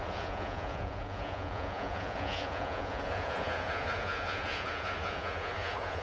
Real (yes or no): no